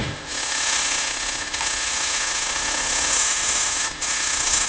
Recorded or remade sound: remade